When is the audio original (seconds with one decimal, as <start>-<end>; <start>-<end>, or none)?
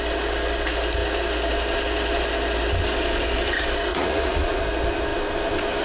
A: 0.0-3.9; 4.6-5.8